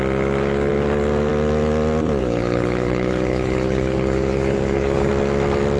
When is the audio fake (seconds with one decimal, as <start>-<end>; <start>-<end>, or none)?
2.2-5.1